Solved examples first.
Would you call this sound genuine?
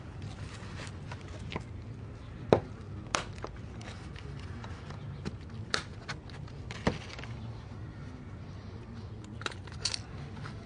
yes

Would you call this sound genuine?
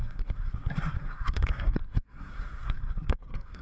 no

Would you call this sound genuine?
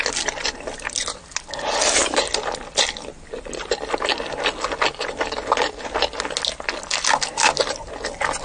yes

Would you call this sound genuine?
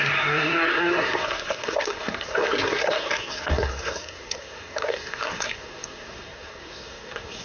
no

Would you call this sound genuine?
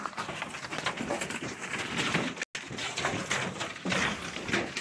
yes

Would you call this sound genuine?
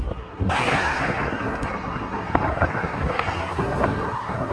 no